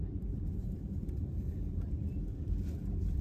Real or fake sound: fake